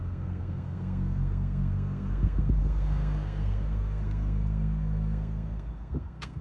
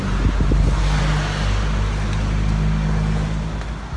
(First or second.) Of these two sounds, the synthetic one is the first